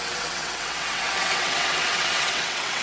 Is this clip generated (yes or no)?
yes